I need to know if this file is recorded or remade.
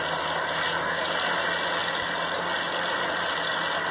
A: recorded